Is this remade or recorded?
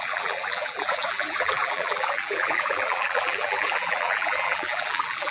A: remade